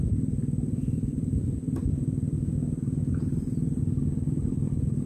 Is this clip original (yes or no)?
yes